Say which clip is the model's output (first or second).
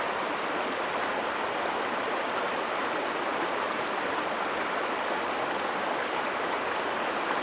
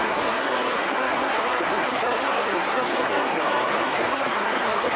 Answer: second